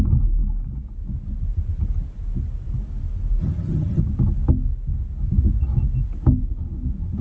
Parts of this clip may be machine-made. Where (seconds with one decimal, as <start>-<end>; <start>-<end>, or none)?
3.4-4.0